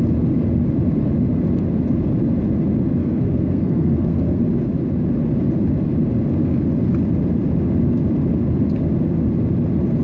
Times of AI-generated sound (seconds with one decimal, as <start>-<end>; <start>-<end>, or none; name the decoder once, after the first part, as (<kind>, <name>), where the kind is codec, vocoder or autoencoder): 3.0-4.4 (codec, SNAC)